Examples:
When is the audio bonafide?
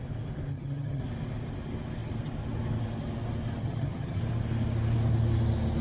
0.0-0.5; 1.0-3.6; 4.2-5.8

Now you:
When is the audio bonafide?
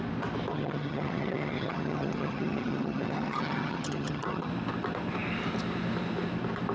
0.0-0.5; 4.5-6.7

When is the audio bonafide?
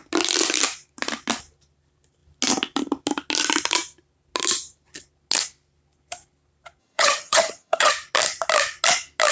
0.0-6.8; 7.9-9.3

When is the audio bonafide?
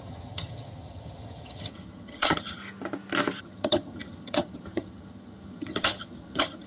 2.6-3.4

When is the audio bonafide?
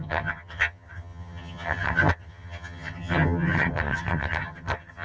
none